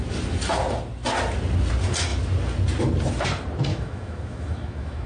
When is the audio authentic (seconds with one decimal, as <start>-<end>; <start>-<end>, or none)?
0.0-3.7